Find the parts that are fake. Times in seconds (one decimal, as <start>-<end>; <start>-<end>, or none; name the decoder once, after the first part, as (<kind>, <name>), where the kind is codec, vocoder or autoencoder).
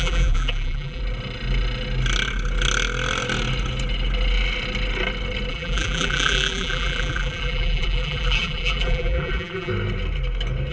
0.0-1.0 (vocoder, BigVGAN v2); 5.5-9.7